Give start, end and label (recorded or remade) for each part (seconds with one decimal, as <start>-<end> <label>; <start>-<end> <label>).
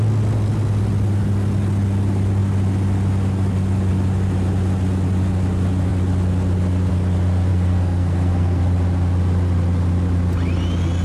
0.0-7.5 recorded; 7.5-8.6 remade; 8.6-11.0 recorded